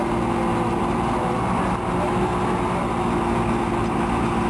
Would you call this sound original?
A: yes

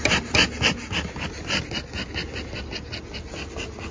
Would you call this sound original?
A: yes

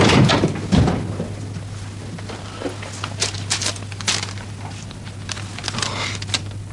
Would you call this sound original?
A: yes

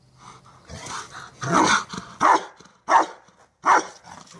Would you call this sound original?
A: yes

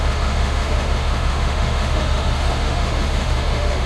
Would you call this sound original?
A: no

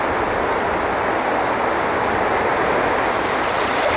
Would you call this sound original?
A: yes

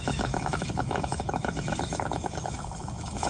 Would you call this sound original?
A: no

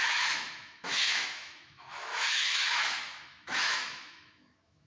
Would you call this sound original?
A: no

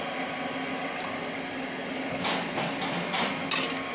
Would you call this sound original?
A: yes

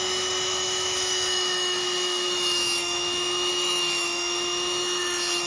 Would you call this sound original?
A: no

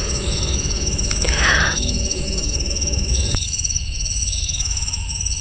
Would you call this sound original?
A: no